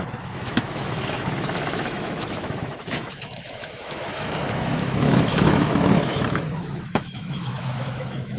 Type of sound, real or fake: fake